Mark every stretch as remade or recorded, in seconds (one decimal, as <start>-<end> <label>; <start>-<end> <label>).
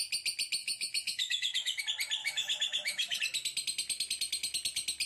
0.0-0.6 recorded; 0.6-1.8 remade; 1.8-2.2 recorded; 2.2-3.2 remade; 3.2-5.1 recorded